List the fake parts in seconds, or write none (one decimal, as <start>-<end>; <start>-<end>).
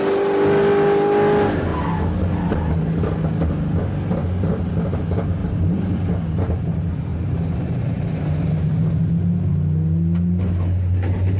4.2-4.7; 5.4-6.1; 7.1-8.2